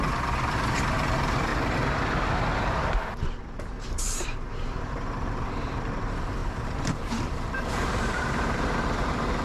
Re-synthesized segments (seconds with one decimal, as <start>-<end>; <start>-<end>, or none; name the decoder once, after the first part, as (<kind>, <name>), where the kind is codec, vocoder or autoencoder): 0.0-1.5 (vocoder, BigVGAN v2); 3.6-9.4